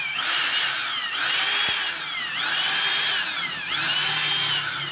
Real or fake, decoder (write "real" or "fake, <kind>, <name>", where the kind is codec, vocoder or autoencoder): real